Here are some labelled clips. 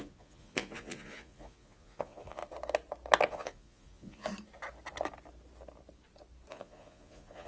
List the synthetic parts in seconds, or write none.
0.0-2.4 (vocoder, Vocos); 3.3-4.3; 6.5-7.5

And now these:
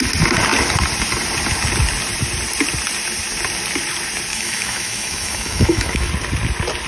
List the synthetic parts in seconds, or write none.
4.3-6.1 (autoencoder, DAC-VAE)